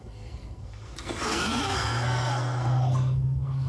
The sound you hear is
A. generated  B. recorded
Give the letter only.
A